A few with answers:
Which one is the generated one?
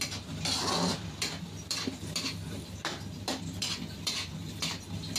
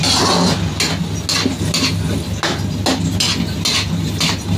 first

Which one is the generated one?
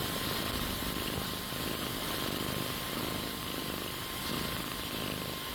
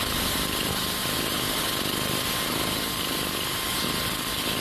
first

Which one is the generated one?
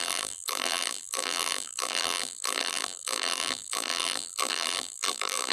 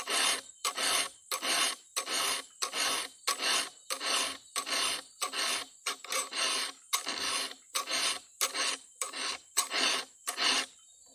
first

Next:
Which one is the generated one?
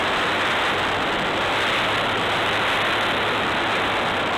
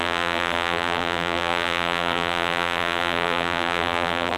second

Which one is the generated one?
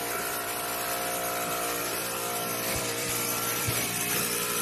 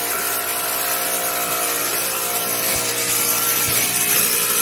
first